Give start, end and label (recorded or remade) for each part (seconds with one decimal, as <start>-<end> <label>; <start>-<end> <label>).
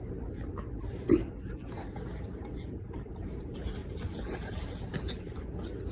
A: 0.0-1.2 recorded; 1.2-3.4 remade; 3.4-3.8 recorded; 3.8-4.8 remade; 4.8-5.9 recorded